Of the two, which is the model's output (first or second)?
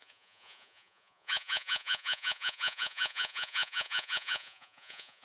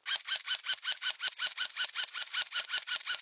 first